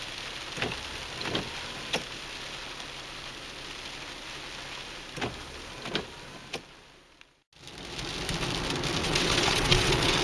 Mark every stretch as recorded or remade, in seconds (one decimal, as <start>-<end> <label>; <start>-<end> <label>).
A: 0.0-9.0 recorded; 9.0-10.2 remade